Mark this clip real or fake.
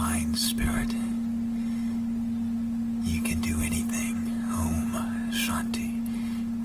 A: real